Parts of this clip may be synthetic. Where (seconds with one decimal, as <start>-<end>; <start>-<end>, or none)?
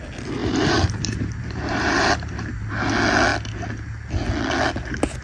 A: 0.4-2.5